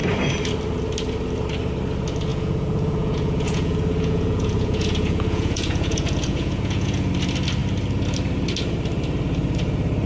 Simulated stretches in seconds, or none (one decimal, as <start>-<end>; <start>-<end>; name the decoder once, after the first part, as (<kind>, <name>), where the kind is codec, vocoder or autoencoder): 2.3-7.1 (vocoder, Vocos)